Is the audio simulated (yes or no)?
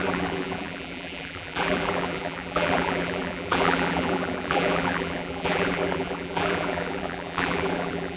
yes